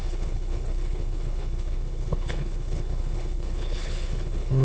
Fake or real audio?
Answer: fake